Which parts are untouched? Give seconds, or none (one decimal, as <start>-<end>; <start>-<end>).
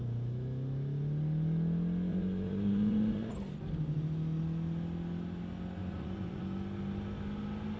0.0-2.1; 3.3-5.8; 6.4-7.8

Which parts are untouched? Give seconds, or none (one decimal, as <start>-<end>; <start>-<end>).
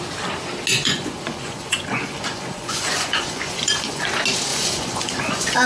0.0-0.7; 4.1-4.5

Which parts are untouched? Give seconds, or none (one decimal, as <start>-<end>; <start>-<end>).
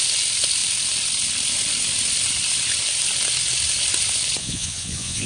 0.0-4.4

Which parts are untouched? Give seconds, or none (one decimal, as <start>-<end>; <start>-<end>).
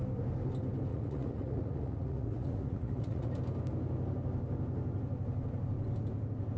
0.0-0.9; 3.3-6.6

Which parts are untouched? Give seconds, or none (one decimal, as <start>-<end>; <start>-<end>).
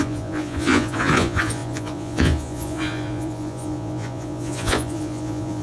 none